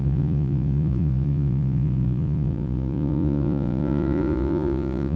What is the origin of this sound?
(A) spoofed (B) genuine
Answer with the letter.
A